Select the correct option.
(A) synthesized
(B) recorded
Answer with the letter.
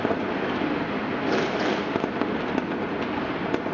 B